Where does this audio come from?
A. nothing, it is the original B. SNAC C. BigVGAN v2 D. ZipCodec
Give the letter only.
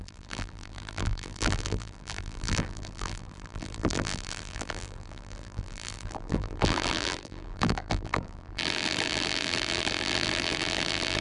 C